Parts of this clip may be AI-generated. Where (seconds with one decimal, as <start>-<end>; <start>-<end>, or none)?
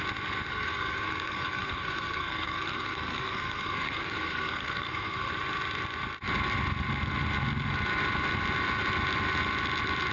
0.5-5.3